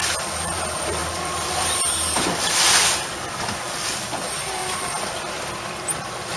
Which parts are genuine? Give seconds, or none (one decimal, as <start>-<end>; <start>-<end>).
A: 4.6-6.0